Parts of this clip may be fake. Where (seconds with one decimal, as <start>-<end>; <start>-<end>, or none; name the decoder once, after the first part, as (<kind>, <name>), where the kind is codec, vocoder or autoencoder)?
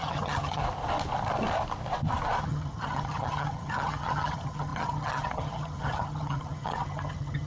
0.0-0.6 (vocoder, HiFi-GAN); 2.4-7.5